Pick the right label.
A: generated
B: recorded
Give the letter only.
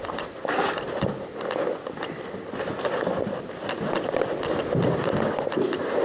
B